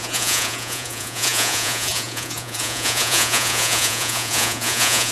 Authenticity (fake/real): fake